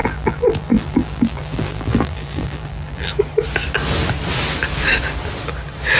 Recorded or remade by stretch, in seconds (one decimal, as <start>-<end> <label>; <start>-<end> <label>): 0.0-3.1 remade; 3.1-6.0 recorded